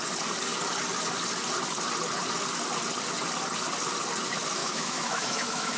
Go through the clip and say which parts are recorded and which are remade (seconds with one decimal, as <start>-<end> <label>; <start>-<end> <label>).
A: 0.0-4.6 recorded; 4.6-5.8 remade